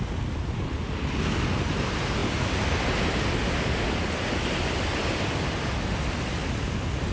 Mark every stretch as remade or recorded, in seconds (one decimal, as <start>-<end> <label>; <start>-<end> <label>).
0.0-7.1 recorded